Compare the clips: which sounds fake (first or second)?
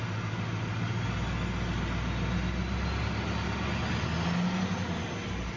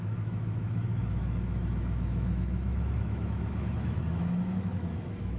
second